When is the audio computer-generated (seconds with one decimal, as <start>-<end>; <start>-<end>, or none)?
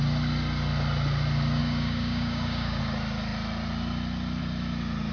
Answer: 1.6-2.8